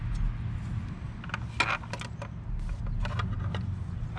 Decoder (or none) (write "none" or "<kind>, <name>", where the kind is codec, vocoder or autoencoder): none